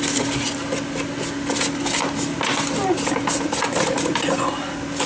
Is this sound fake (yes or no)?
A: no